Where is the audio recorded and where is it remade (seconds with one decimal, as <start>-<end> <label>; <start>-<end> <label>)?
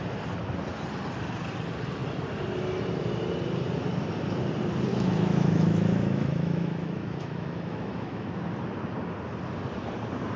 0.0-4.9 recorded; 4.9-8.4 remade; 8.4-10.4 recorded